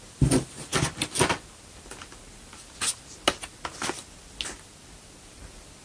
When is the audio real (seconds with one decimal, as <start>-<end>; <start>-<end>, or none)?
0.0-5.8